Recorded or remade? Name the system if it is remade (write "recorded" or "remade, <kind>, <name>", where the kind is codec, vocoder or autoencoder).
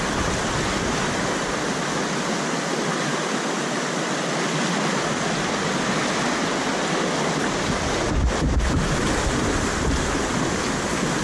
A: recorded